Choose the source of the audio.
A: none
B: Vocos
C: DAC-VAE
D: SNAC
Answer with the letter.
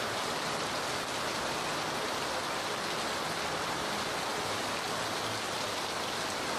A